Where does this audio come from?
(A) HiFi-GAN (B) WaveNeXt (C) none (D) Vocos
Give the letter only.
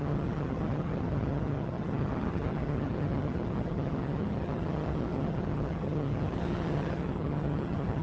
A